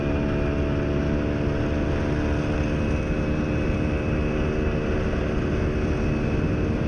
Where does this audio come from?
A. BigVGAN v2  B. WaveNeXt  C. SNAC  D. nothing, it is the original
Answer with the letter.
D